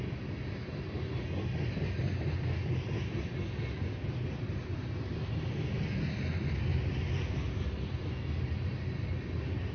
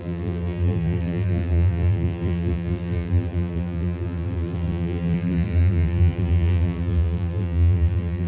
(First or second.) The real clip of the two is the first